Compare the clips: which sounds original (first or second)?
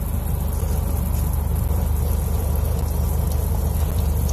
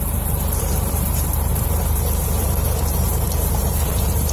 first